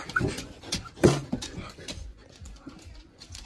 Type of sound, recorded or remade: remade